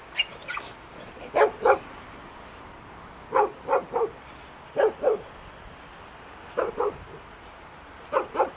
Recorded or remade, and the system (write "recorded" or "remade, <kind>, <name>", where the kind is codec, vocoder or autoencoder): recorded